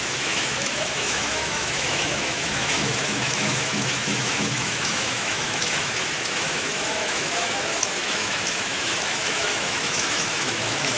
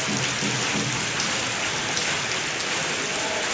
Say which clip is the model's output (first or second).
first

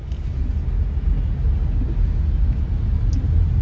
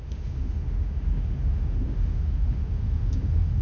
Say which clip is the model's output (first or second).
second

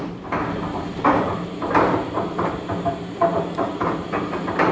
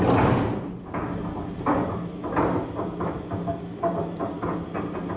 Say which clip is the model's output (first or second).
first